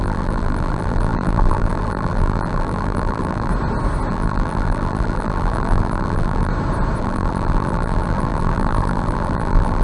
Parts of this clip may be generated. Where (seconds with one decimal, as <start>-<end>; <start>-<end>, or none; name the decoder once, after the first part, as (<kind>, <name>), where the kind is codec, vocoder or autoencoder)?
0.0-3.5 (vocoder, BigVGAN v2); 4.1-6.5; 7.0-9.8